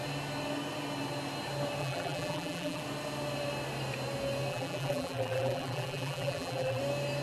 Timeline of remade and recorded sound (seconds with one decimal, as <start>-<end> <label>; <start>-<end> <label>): 0.0-1.8 recorded; 1.8-2.8 remade; 2.8-4.5 recorded; 4.5-6.8 remade; 6.8-7.2 recorded